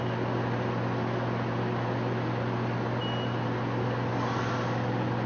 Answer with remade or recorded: recorded